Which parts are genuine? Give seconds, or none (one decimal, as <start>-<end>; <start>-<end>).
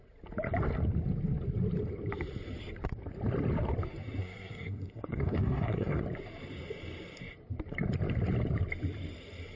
0.0-4.2; 6.0-9.6